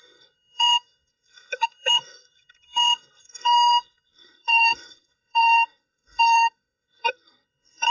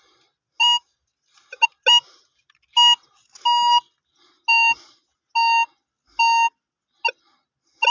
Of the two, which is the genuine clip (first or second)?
second